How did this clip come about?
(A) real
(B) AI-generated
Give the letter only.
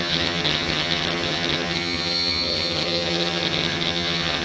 B